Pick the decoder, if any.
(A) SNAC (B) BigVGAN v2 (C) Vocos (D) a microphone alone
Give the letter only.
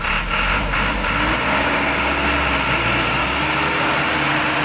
D